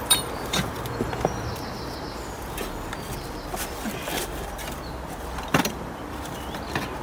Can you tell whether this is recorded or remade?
remade